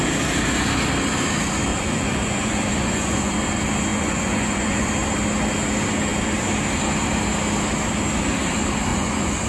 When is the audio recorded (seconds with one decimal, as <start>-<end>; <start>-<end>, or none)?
0.0-1.7; 3.3-3.9; 4.9-8.9